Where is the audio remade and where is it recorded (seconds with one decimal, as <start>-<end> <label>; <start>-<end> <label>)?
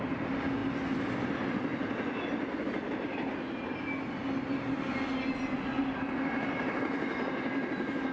0.0-8.1 recorded